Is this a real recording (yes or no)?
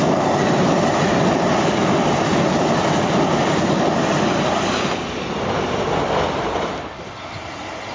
yes